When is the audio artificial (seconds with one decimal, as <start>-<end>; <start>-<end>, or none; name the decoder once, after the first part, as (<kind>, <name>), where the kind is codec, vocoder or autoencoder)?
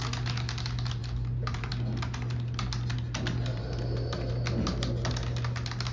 1.0-1.7 (vocoder, BigVGAN v2); 3.5-4.3